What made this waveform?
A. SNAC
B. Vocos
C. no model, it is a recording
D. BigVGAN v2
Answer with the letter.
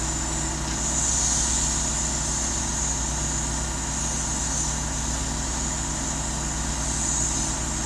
C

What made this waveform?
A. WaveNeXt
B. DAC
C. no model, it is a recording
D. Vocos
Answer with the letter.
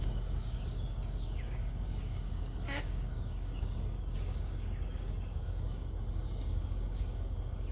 B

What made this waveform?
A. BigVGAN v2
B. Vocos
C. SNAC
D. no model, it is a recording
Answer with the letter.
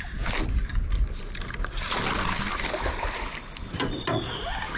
D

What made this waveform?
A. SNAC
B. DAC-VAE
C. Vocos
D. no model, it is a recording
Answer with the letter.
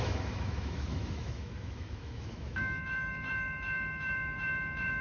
B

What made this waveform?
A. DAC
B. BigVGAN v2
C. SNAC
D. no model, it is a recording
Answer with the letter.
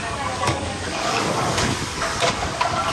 A